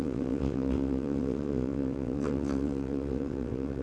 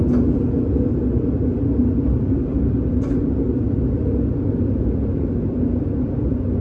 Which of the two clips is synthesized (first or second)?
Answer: first